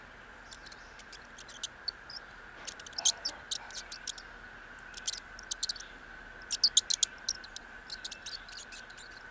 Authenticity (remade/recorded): recorded